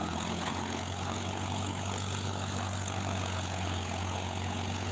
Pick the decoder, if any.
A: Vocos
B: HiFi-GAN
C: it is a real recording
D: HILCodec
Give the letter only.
D